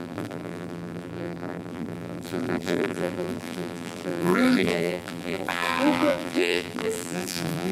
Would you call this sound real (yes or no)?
no